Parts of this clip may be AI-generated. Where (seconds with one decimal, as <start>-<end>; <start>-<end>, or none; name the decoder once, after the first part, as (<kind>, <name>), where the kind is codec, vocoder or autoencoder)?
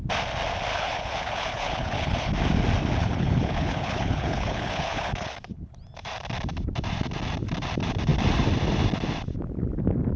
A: 0.7-2.3 (codec, HILCodec); 3.0-5.7